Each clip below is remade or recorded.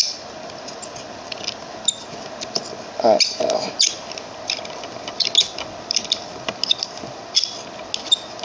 recorded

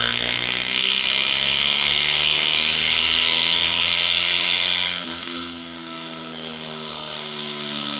remade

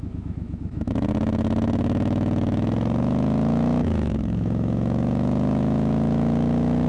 remade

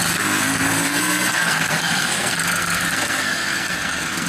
remade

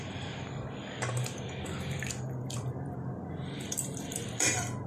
remade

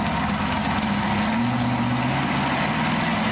recorded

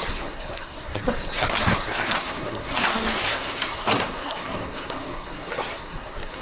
remade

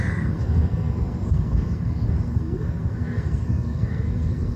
remade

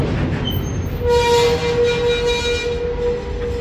recorded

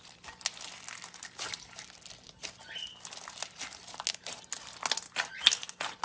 recorded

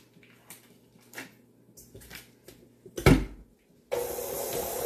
recorded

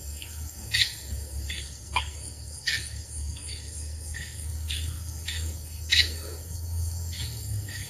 remade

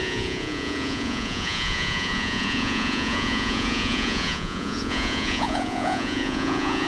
remade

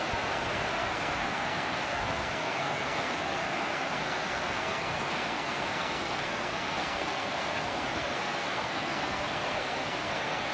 remade